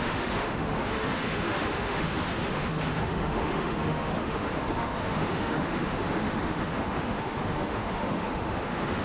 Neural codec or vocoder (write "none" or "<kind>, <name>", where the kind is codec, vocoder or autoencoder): autoencoder, DAC-VAE